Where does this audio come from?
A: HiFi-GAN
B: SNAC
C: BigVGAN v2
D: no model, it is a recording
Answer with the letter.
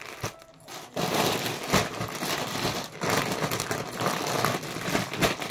D